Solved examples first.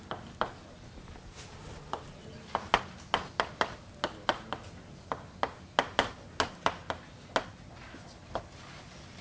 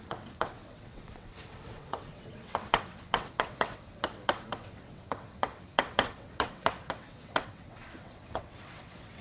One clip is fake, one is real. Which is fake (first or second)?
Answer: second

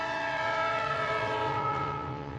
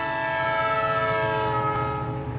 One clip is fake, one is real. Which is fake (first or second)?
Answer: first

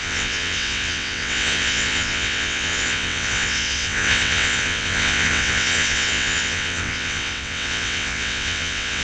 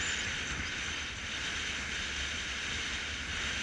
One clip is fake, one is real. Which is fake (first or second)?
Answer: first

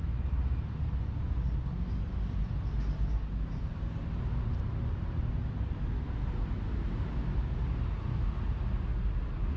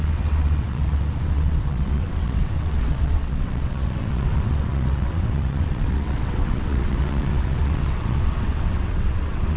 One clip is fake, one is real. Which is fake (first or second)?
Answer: second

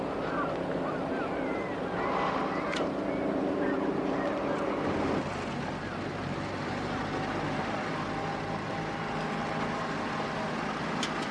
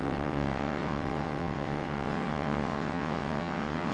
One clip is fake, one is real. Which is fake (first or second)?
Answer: second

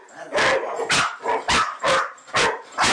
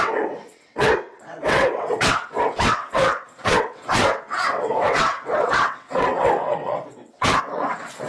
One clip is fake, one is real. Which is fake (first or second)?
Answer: second